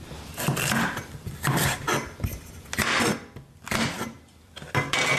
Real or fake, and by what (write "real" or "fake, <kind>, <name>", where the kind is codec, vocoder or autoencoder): real